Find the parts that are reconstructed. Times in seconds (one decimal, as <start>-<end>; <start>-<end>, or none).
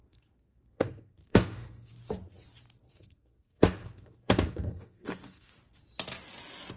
0.0-1.9; 2.9-5.5